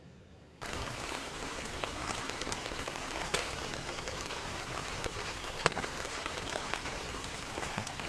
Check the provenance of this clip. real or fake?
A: fake